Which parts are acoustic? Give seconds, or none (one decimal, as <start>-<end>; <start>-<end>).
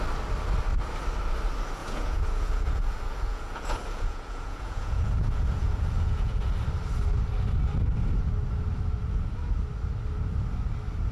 0.0-1.8; 6.5-11.1